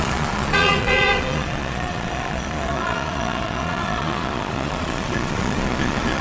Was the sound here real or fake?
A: fake